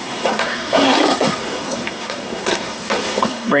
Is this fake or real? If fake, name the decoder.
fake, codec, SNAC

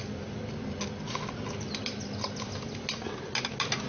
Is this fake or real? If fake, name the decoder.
real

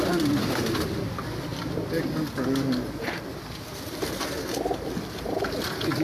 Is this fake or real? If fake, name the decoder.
real